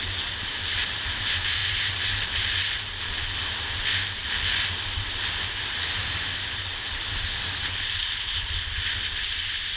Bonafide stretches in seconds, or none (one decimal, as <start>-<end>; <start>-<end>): 0.0-9.8